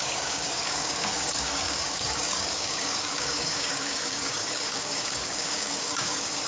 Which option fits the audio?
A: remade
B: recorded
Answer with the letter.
A